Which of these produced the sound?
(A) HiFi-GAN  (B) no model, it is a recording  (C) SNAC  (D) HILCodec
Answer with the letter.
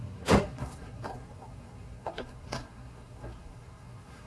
C